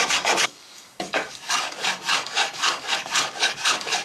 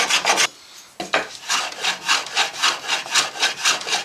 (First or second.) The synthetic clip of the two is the first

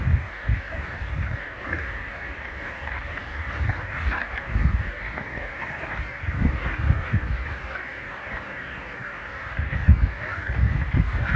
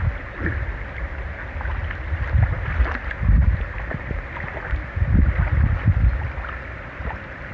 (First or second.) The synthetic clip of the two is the first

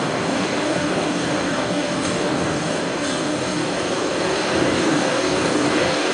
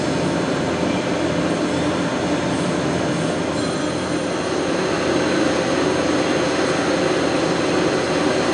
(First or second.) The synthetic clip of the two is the first